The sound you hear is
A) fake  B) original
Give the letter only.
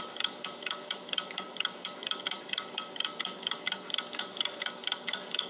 A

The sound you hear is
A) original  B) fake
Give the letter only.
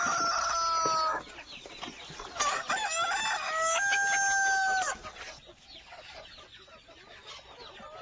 A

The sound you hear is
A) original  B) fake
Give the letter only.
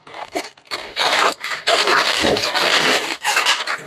B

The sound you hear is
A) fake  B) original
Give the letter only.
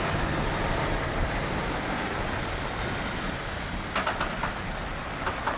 B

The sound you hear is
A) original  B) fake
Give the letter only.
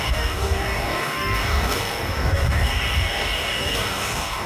B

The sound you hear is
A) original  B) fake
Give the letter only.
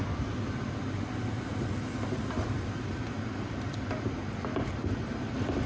A